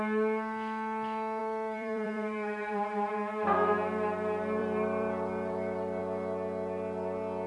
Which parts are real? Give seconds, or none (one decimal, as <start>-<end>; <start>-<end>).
0.0-1.4; 3.1-4.6; 6.0-7.5